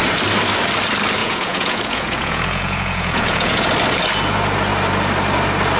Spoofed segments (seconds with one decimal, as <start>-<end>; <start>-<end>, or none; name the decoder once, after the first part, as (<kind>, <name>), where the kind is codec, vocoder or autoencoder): 1.2-3.7 (vocoder, Vocos)